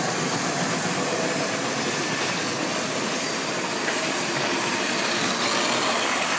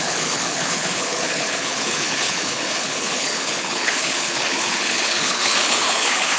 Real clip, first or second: first